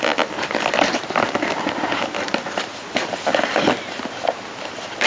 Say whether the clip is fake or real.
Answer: real